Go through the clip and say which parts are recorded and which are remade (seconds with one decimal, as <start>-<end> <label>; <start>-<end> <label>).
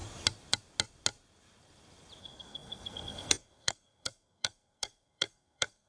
0.0-2.2 recorded; 2.2-5.9 remade